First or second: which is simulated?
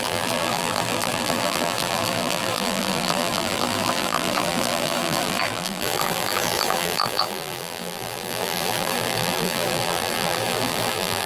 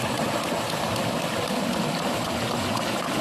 first